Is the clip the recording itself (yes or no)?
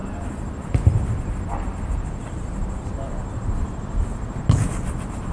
yes